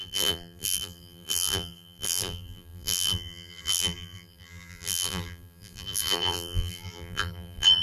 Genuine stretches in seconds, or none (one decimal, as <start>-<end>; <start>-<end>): none